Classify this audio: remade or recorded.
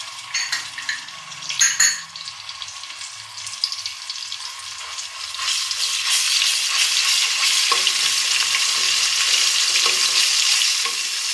recorded